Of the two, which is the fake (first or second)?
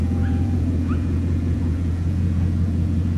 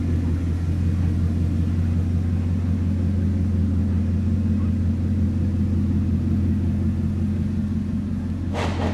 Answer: first